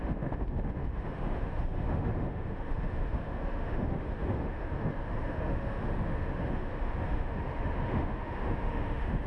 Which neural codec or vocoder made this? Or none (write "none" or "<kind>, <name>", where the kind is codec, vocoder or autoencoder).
autoencoder, DAC-VAE